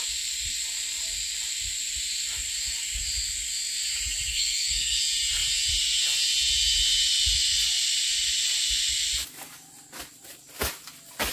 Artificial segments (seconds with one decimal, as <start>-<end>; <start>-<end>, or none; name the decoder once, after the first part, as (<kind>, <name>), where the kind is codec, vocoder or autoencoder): 4.3-5.0 (codec, SNAC)